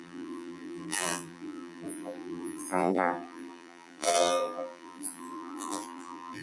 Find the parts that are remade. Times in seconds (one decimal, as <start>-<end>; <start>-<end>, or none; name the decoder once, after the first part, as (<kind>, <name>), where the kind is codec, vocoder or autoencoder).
0.0-6.4 (vocoder, BigVGAN v2)